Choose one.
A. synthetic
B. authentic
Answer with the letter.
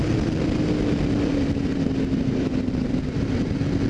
A